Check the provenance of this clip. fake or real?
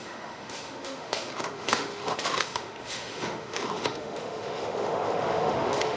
fake